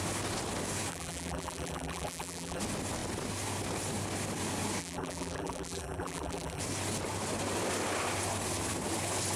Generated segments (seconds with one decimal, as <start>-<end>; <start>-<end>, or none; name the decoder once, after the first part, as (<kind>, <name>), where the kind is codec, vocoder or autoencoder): 0.9-2.6 (vocoder, BigVGAN v2); 4.8-6.6